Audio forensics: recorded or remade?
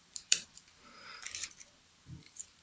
remade